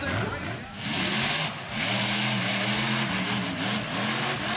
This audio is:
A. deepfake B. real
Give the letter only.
B